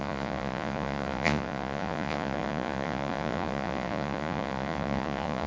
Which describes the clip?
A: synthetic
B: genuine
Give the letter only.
A